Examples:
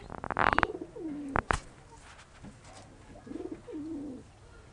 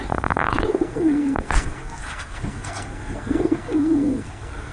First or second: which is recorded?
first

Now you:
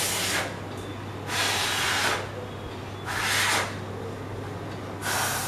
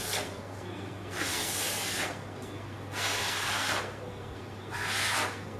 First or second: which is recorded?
first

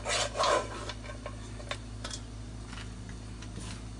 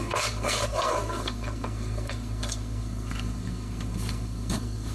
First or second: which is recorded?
first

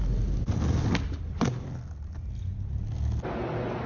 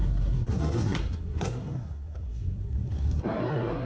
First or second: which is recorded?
first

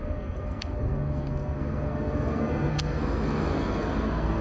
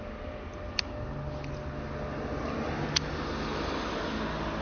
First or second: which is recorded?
second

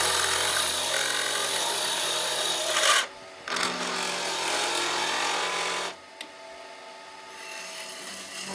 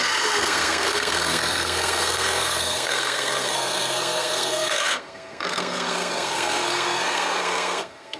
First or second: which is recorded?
first